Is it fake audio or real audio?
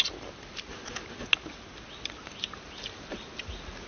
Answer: real